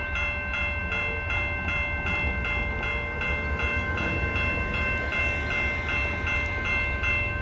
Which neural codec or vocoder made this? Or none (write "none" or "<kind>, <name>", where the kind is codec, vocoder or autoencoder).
none